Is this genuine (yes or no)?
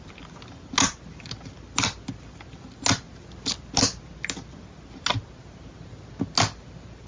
yes